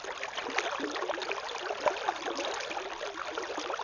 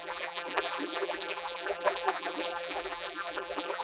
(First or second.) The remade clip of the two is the second